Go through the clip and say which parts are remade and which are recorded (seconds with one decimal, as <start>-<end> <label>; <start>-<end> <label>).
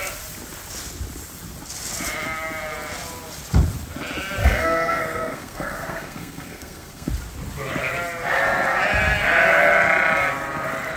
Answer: 0.0-4.4 recorded; 4.4-7.1 remade; 7.1-11.0 recorded